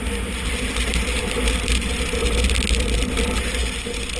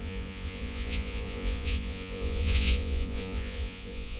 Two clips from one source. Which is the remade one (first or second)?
second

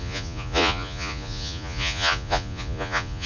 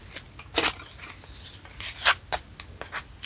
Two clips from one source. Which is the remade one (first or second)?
first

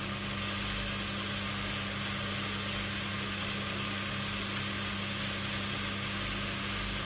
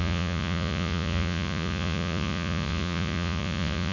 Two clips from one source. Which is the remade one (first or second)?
second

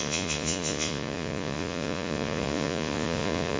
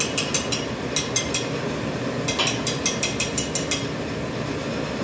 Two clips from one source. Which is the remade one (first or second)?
first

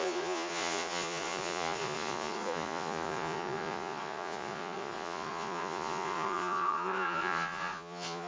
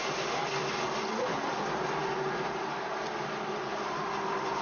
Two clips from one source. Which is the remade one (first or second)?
first